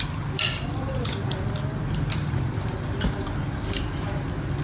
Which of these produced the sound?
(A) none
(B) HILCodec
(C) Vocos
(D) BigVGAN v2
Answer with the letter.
D